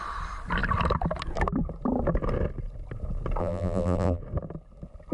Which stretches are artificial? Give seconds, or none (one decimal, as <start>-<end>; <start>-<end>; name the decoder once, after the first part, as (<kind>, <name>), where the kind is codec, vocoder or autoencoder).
3.4-4.2 (vocoder, BigVGAN v2)